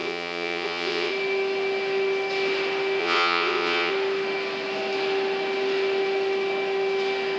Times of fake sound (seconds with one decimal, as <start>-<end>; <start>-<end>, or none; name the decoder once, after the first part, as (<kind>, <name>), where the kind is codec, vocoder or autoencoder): 0.0-1.1 (vocoder, WaveNeXt); 3.0-3.9